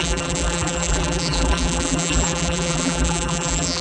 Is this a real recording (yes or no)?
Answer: no